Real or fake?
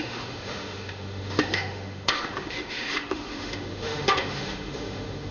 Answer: fake